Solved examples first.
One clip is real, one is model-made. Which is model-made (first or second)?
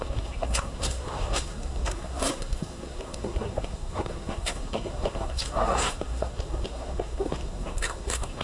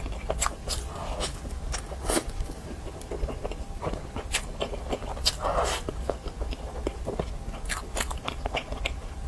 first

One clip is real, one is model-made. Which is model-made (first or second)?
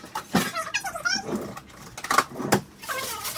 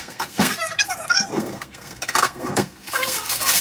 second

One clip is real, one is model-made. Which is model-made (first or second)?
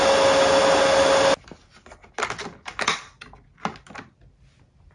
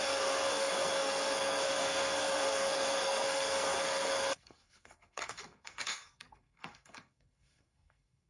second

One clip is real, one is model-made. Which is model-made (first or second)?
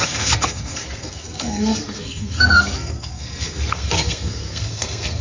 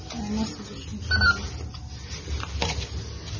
first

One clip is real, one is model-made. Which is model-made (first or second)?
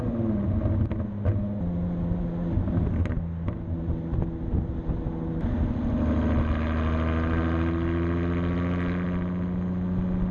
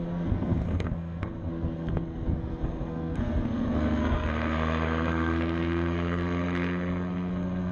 second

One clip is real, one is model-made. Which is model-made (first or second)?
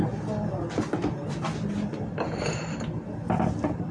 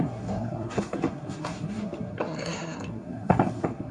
second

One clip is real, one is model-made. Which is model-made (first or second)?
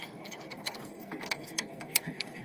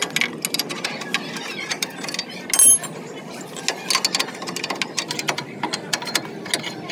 first